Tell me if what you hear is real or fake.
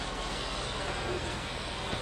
fake